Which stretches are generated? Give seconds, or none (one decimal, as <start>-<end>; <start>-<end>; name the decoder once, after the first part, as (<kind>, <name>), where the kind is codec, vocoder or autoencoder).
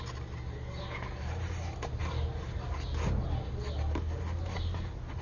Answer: none